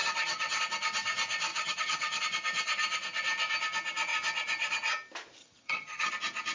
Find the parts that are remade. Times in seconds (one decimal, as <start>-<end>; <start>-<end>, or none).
0.0-0.6; 1.5-2.2; 5.4-6.1